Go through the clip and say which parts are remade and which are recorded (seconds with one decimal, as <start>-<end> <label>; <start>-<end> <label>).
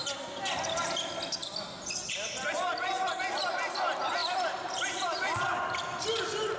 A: 0.0-1.4 recorded; 1.4-3.1 remade; 3.1-4.2 recorded; 4.2-5.4 remade; 5.4-6.6 recorded